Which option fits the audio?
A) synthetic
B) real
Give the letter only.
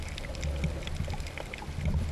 B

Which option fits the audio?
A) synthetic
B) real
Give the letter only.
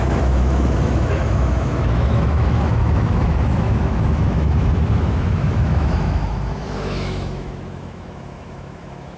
A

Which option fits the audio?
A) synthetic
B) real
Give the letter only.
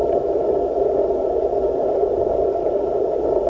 B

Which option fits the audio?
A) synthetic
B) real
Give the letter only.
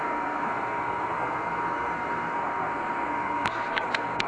A